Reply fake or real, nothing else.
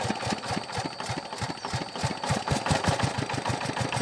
real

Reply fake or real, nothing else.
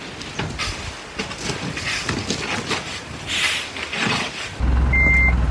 real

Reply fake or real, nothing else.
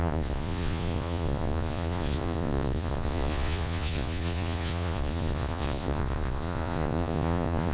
fake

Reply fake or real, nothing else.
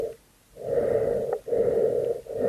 real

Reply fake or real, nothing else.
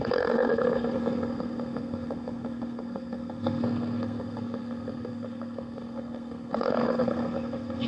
fake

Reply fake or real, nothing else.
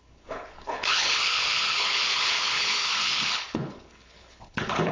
fake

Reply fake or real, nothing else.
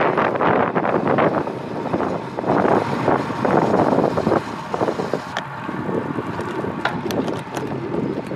real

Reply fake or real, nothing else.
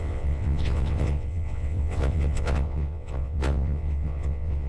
fake